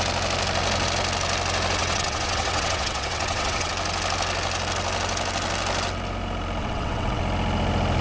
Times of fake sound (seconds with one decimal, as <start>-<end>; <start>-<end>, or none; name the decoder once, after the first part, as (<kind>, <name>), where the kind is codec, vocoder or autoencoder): 1.8-3.7 (vocoder, WaveNeXt); 6.6-7.2